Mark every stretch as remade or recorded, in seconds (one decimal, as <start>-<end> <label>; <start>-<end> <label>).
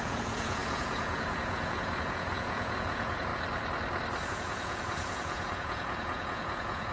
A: 0.0-3.3 remade; 3.3-4.3 recorded; 4.3-6.9 remade